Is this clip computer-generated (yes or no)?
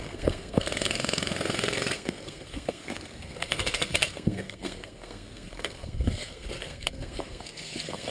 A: yes